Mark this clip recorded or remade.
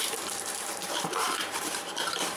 remade